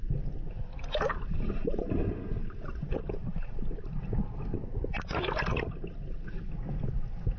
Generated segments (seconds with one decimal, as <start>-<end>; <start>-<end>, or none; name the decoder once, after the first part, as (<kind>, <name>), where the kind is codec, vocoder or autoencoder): 1.3-3.1 (vocoder, BigVGAN v2)

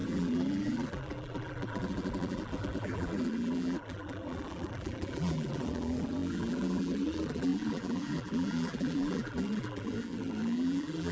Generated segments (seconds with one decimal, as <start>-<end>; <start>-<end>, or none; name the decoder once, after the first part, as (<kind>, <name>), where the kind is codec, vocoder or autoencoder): 0.0-11.1 (vocoder, BigVGAN v2)